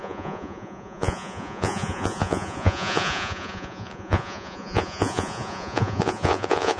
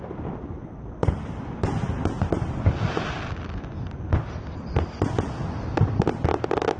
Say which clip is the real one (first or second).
second